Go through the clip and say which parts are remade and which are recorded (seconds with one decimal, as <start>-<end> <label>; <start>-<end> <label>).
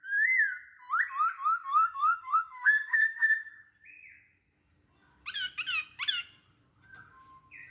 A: 0.0-1.7 recorded; 1.7-3.5 remade; 3.5-7.7 recorded